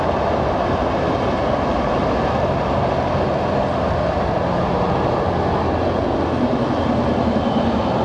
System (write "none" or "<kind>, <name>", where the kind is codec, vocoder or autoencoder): none